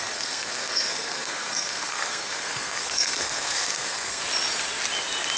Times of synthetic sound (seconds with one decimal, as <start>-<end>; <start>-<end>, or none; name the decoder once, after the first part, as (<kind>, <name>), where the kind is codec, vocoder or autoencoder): 0.0-4.2 (codec, SNAC)